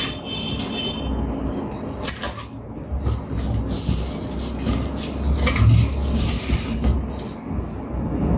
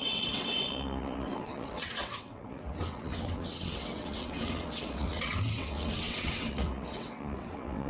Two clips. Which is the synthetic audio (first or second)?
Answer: second